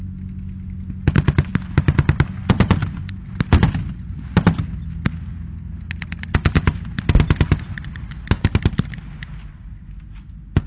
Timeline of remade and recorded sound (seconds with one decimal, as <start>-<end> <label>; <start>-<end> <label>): 0.0-10.7 recorded